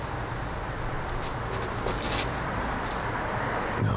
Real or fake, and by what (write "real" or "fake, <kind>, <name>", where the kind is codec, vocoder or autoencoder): real